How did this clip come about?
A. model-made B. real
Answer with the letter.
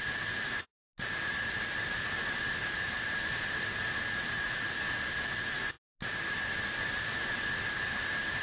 B